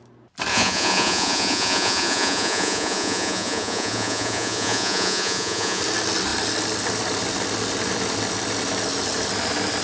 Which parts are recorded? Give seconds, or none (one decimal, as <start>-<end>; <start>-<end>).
0.0-0.5; 5.8-9.8